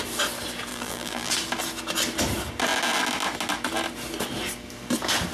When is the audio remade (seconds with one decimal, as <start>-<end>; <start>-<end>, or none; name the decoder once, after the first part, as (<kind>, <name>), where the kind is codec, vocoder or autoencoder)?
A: 0.7-1.3 (vocoder, BigVGAN v2)